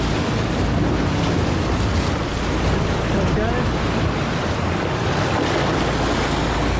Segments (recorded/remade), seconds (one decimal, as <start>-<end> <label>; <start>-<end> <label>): 0.0-6.8 recorded